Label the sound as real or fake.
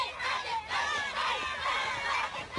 real